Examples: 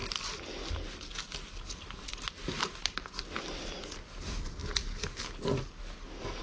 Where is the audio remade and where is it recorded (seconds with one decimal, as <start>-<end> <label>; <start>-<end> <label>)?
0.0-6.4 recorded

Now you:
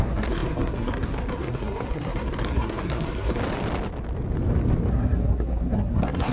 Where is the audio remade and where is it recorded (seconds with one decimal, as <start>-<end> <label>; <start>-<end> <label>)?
0.0-3.4 remade; 3.4-4.9 recorded; 4.9-6.3 remade

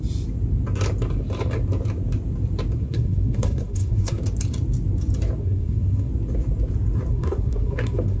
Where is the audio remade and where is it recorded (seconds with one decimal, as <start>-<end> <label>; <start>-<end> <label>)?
0.0-2.8 recorded; 2.8-4.2 remade; 4.2-5.4 recorded; 5.4-6.1 remade; 6.1-7.1 recorded; 7.1-8.2 remade

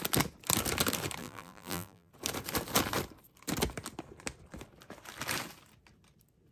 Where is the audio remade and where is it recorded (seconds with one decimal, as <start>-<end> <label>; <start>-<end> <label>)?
0.0-1.2 recorded; 1.2-2.1 remade; 2.1-6.5 recorded

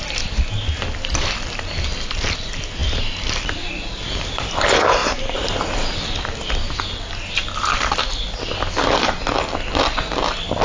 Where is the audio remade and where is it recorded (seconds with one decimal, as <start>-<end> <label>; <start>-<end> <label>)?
0.0-10.6 recorded

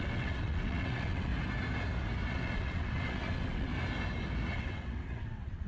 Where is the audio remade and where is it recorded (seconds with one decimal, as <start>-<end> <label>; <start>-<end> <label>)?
0.0-1.3 remade; 1.3-2.3 recorded; 2.3-3.7 remade; 3.7-4.5 recorded; 4.5-5.7 remade